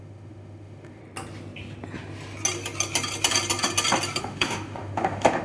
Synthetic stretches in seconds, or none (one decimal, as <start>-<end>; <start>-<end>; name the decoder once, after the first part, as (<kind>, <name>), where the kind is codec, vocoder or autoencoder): 0.0-1.0 (autoencoder, DAC-VAE); 4.2-5.4